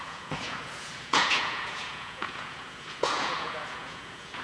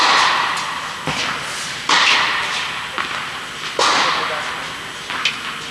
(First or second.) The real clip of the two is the second